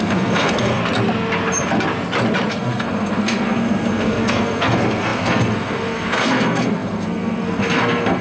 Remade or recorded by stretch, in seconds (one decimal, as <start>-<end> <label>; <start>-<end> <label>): 0.0-0.8 remade; 0.8-2.5 recorded; 2.5-8.2 remade